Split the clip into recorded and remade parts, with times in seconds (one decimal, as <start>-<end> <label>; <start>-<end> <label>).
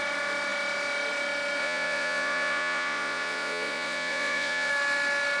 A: 0.0-1.6 recorded; 1.6-4.7 remade; 4.7-5.4 recorded